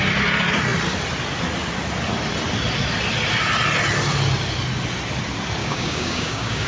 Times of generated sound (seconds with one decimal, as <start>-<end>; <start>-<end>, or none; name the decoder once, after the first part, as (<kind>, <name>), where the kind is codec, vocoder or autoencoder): 5.6-6.7 (codec, DAC)